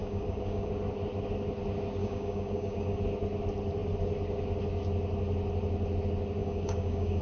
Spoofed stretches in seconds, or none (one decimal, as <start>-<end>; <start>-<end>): 0.0-0.7; 2.0-3.0; 6.4-7.2